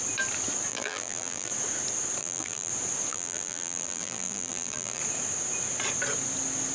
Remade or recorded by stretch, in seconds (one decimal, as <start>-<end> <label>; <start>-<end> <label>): 0.0-0.7 recorded; 0.7-1.5 remade; 1.5-2.2 recorded; 2.2-2.7 remade; 2.7-3.1 recorded; 3.1-5.0 remade; 5.0-6.7 recorded